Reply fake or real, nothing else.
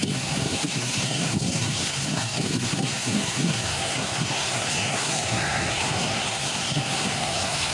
fake